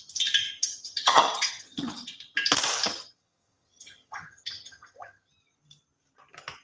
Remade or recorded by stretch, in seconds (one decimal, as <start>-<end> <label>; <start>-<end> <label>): 0.0-0.6 recorded; 0.6-2.1 remade; 2.1-2.9 recorded; 2.9-5.3 remade; 5.3-6.6 recorded